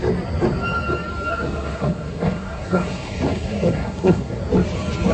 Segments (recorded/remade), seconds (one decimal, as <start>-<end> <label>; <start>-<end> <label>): 0.0-1.3 recorded; 1.3-4.4 remade; 4.4-5.1 recorded